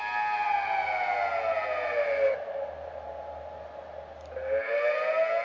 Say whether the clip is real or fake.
real